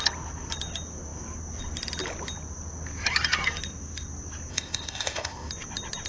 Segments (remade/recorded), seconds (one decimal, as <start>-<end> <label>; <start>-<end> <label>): 0.0-4.5 recorded; 4.5-5.5 remade; 5.5-6.1 recorded